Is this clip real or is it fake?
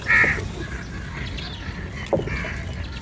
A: real